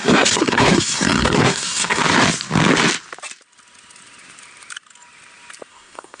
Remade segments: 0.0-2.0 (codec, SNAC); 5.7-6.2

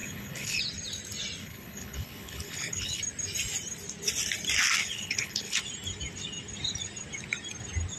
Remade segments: 0.0-0.6 (codec, HILCodec); 1.4-3.0; 4.8-5.6

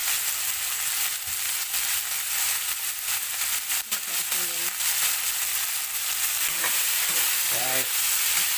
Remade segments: none

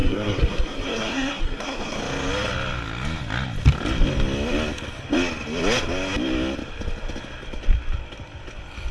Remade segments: 0.0-2.0 (codec, SNAC)

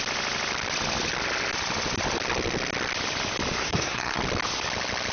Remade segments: 3.6-4.2 (codec, SNAC)

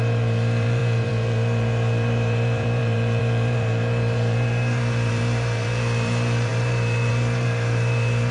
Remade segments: 0.0-8.3 (vocoder, BigVGAN v2)

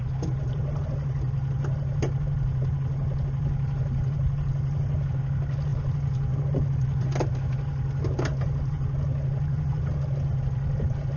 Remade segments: none

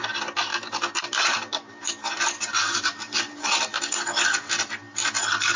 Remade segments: 0.5-3.8 (vocoder, BigVGAN v2)